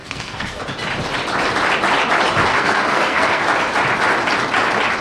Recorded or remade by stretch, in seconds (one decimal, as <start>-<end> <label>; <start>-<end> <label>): 0.0-0.6 remade; 0.6-2.5 recorded; 2.5-3.4 remade; 3.4-5.0 recorded